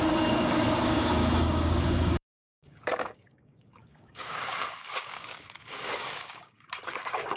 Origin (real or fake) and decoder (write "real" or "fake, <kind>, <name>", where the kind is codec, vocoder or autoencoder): fake, codec, DAC